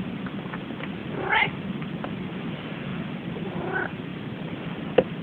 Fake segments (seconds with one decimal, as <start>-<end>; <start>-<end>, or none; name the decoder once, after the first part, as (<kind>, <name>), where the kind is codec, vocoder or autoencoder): 1.0-1.7 (vocoder, BigVGAN v2); 2.9-3.6; 4.1-4.8